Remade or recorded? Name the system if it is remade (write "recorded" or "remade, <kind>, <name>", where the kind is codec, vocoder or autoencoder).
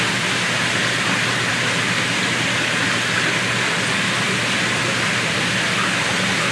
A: recorded